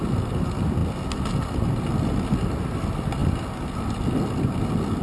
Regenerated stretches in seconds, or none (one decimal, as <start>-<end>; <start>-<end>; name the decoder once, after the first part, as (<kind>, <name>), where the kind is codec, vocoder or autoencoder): none